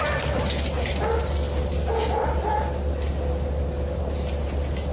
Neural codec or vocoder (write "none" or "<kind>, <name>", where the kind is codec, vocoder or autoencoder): none